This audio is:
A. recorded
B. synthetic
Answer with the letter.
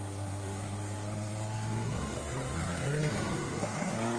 B